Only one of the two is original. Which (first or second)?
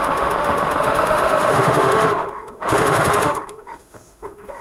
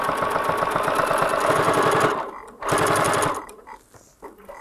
second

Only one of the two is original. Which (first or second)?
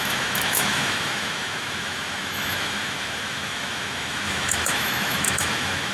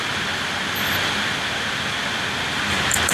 second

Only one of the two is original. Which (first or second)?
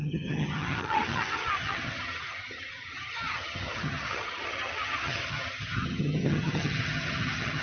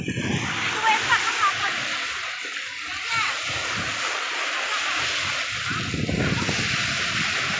second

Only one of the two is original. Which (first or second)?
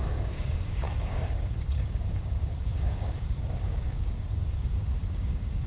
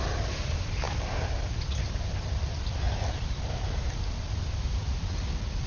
second